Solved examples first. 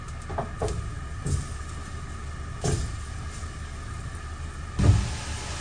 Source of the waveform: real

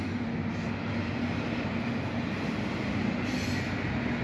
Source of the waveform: real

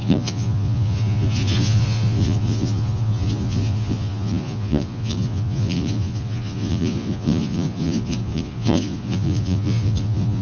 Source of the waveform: fake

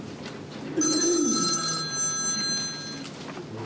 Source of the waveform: real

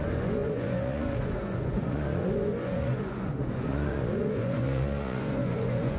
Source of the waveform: fake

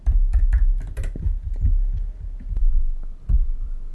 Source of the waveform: real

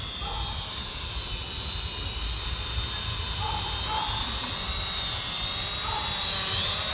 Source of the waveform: real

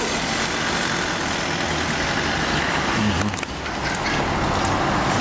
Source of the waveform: real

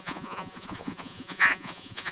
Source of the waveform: fake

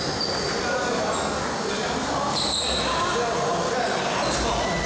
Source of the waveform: real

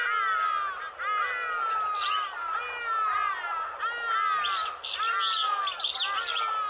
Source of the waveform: real